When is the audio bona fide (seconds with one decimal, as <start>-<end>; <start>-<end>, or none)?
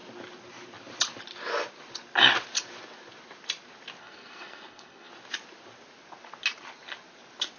0.0-4.0; 5.1-7.6